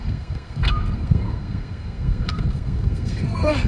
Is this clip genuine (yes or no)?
no